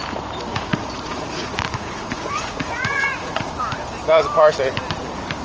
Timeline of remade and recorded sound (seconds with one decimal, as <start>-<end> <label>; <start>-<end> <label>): 0.0-0.5 recorded; 0.5-3.5 remade; 3.5-5.4 recorded